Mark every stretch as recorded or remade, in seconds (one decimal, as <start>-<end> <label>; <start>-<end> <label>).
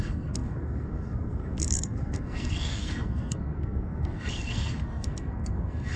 0.0-6.0 remade